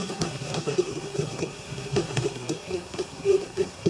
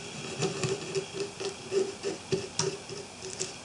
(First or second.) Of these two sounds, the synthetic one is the first